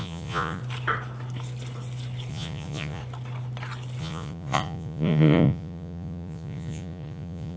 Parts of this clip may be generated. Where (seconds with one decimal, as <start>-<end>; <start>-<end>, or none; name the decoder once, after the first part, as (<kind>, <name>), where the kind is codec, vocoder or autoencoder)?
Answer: 0.0-0.6 (vocoder, Vocos); 2.3-3.0; 4.0-7.6